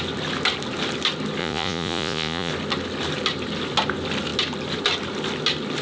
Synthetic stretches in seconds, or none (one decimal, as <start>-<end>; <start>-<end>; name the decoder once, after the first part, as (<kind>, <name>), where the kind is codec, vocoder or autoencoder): 1.4-2.5 (vocoder, Vocos)